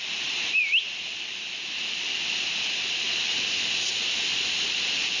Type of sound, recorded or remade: recorded